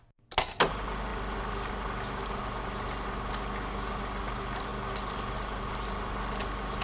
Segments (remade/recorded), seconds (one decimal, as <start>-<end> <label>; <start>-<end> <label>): 0.0-6.8 recorded